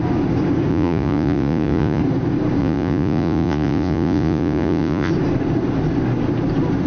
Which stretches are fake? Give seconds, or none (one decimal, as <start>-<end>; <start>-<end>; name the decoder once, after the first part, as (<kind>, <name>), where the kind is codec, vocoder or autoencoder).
0.7-2.0 (vocoder, Vocos); 2.6-5.1